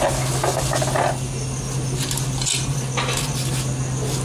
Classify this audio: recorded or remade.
recorded